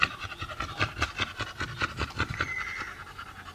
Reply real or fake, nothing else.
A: real